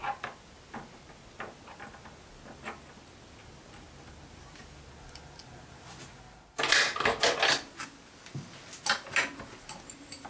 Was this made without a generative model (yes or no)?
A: yes